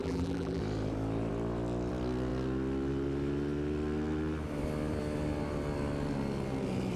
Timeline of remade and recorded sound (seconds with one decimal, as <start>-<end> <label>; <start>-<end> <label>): 0.0-0.6 remade; 0.6-7.0 recorded